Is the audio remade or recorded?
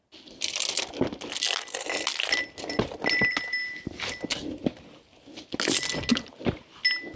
recorded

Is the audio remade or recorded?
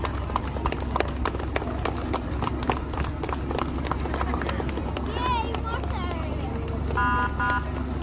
recorded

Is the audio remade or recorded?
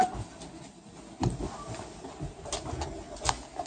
recorded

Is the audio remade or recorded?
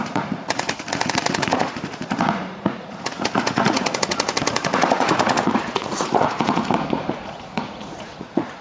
remade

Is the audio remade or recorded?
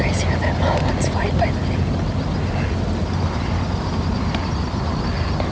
recorded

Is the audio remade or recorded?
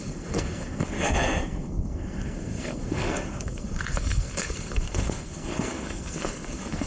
remade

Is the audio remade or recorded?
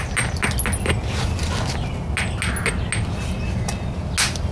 recorded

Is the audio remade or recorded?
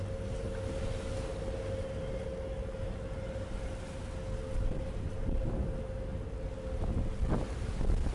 recorded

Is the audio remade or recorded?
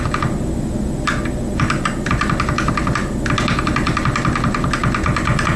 recorded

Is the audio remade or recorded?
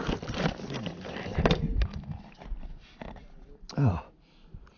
recorded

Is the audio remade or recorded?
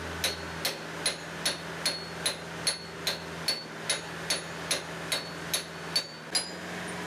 recorded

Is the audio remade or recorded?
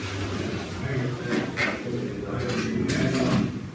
recorded